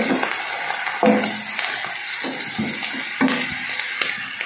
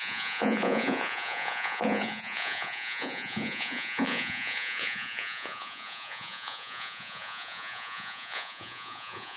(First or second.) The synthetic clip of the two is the second